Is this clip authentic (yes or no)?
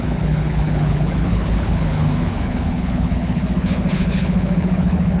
no